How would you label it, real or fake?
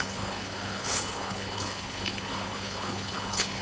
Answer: fake